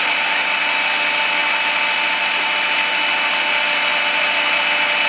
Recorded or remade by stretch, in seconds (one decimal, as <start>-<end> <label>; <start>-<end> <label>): 0.0-5.1 recorded